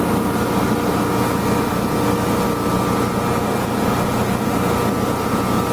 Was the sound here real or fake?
real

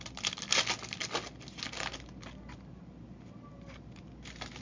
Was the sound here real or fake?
real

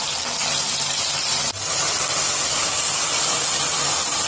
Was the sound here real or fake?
real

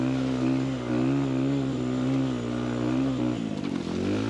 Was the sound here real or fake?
real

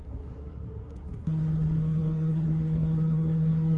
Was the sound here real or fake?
fake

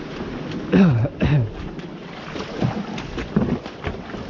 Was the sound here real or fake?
real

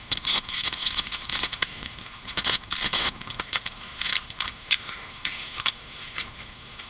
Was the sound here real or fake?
fake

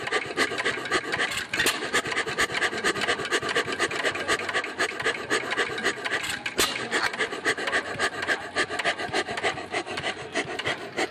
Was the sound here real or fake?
real